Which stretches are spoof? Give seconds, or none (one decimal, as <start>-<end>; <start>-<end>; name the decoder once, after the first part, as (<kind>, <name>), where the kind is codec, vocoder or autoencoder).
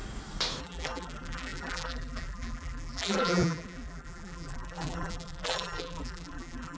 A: 0.6-6.8 (vocoder, BigVGAN v2)